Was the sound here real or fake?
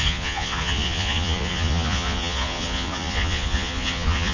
fake